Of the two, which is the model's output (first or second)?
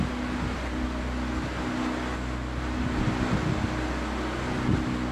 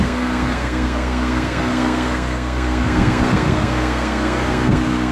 second